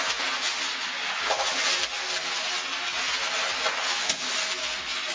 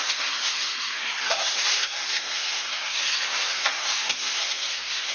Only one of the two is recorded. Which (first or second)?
first